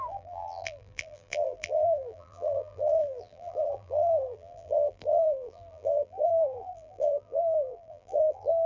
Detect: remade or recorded remade